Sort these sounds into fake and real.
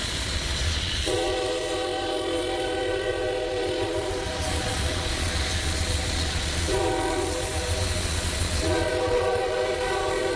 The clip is fake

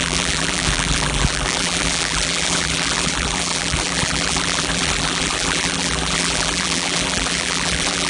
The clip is fake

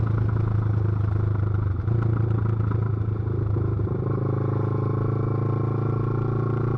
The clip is real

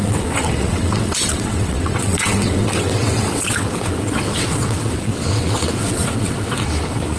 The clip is fake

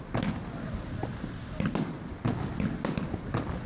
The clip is real